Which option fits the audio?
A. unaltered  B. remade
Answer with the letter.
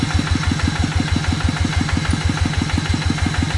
A